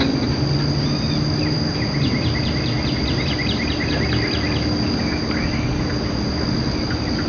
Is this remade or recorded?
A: recorded